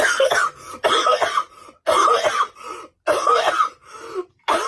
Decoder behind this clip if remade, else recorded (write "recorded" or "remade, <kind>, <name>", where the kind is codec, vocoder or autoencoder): recorded